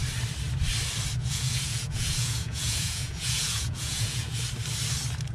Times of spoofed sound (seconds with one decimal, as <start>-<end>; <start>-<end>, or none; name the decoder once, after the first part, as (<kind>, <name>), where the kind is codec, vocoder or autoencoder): 1.2-4.4 (vocoder, Vocos)

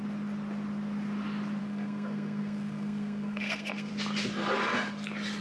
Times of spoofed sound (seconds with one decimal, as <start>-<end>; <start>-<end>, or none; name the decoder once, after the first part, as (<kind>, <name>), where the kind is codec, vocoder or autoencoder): 1.6-3.9 (codec, SNAC)

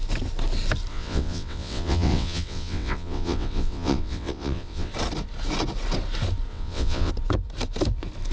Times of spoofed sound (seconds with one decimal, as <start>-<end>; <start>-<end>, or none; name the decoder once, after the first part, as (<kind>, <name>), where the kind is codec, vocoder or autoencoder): 0.9-4.9 (vocoder, WaveNeXt); 6.5-7.1